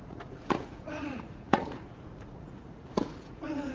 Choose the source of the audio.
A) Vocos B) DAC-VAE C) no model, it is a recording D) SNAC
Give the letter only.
A